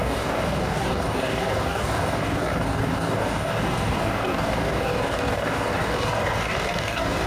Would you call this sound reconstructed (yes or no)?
yes